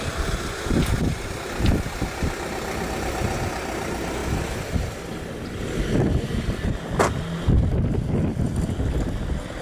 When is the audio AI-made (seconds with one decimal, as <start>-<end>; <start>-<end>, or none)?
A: 1.1-1.8